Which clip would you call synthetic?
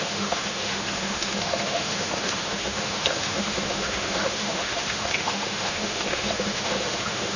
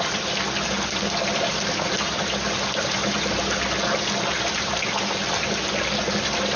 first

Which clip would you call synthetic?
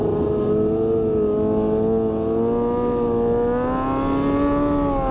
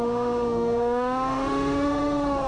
second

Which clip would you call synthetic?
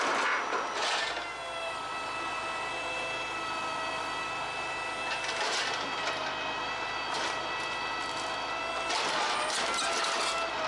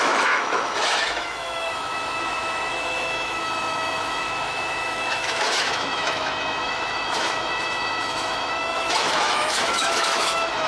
second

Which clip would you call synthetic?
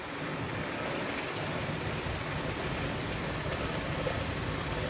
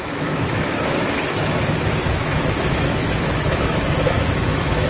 second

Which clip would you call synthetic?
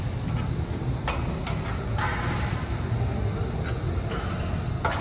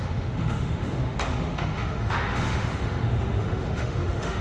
second